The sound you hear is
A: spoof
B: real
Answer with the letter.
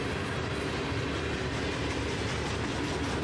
B